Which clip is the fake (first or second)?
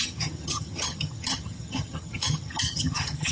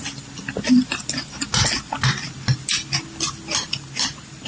first